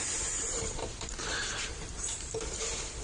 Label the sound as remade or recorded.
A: remade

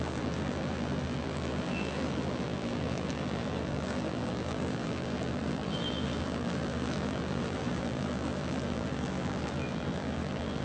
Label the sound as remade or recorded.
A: remade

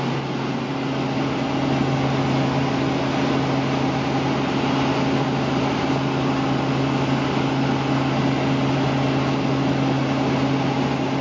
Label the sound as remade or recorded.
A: recorded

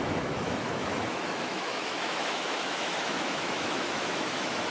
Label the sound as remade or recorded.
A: remade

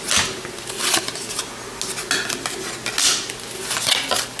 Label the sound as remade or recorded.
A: recorded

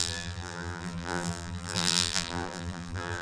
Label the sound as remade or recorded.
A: remade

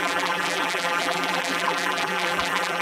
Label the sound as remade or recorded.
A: remade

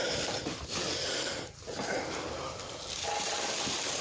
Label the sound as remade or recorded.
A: recorded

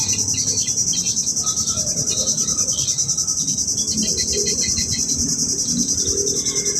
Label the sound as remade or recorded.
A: recorded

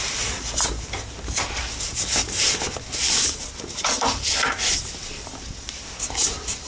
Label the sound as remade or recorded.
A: recorded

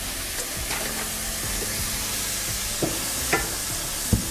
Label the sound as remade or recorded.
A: recorded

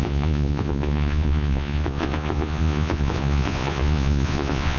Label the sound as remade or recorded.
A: remade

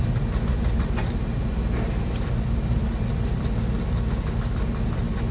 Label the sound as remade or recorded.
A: recorded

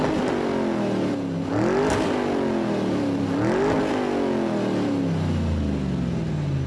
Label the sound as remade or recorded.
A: recorded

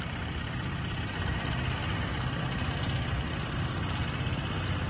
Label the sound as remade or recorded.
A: remade